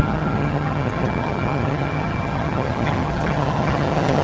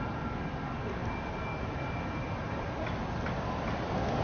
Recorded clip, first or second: second